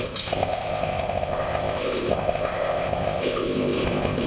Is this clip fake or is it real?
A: fake